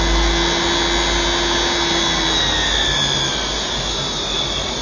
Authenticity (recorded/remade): recorded